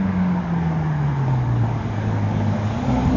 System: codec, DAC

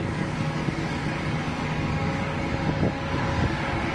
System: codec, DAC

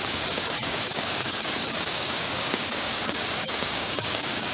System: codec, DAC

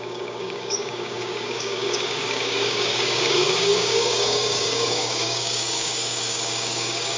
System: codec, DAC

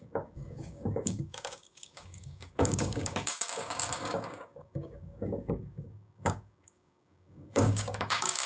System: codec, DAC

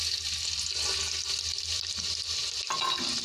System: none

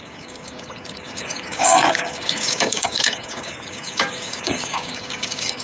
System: codec, DAC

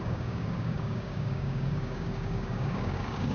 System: codec, DAC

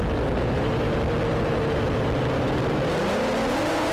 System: none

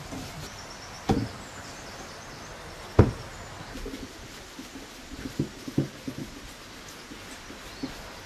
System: none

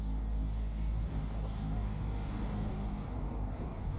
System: codec, DAC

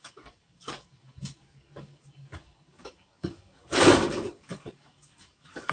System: codec, DAC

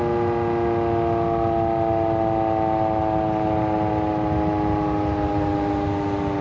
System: none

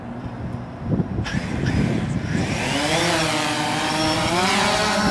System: none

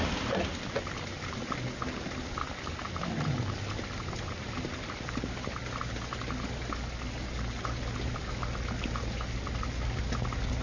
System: none